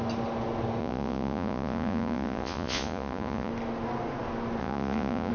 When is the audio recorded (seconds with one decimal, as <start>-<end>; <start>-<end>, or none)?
0.0-0.8; 3.5-4.6